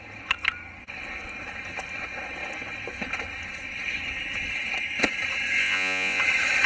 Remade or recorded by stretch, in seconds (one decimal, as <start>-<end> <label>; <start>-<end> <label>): 0.0-5.6 recorded; 5.6-6.2 remade; 6.2-6.7 recorded